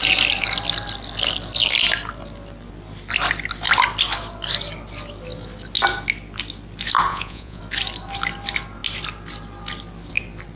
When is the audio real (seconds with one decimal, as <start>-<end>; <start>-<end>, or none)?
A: 0.0-7.1; 7.6-10.6

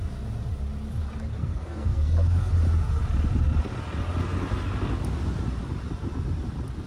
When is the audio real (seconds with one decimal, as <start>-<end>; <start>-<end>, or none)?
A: 0.0-1.4; 2.5-6.9

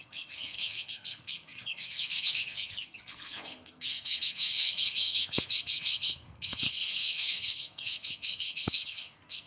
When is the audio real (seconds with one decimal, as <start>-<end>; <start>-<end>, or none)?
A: none

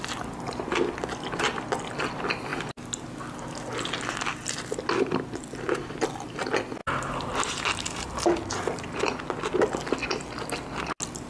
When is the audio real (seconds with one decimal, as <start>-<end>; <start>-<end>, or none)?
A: 0.0-11.3

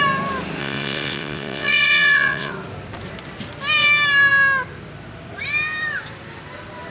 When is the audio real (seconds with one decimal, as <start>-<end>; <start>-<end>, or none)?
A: 0.0-0.6; 2.5-6.9

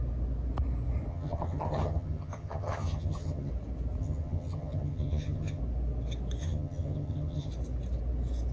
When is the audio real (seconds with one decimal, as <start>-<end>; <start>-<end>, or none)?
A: 0.0-1.1; 3.5-4.0; 5.6-6.4; 7.5-8.5

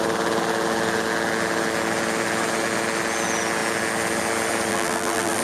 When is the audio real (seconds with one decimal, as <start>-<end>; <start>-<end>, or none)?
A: 0.0-4.7